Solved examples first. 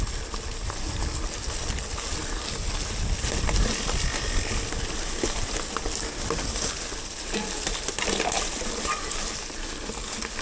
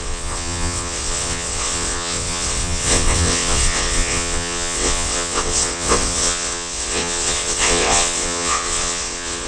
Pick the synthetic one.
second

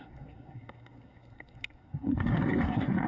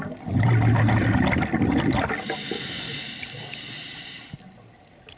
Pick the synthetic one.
first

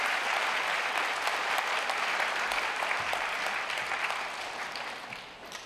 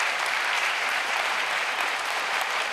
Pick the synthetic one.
second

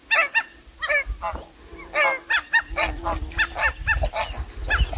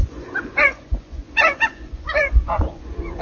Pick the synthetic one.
second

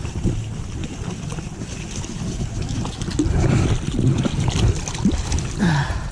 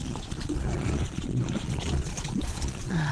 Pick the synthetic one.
second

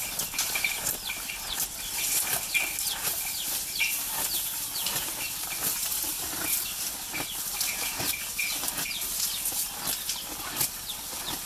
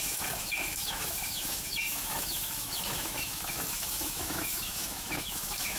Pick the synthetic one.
second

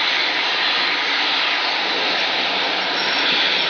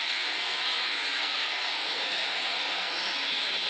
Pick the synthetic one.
second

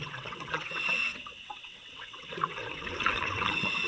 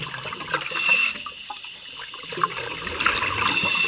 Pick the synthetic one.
first